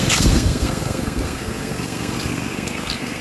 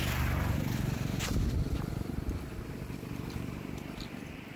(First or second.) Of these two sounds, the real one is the second